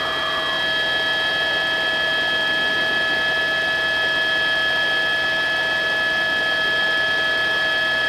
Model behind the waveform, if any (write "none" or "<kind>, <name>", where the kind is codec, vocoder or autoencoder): none